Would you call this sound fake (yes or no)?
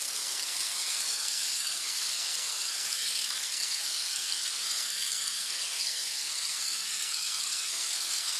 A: yes